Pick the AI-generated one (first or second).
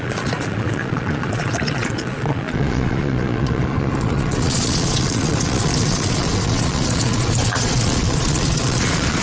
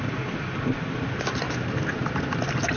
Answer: first